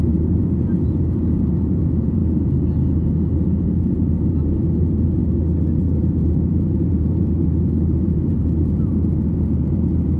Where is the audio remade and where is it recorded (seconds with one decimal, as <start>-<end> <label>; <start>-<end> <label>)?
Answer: 0.0-2.2 remade; 2.2-3.6 recorded; 3.6-5.2 remade; 5.2-5.8 recorded; 5.8-10.2 remade